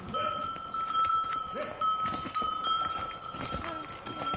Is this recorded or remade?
recorded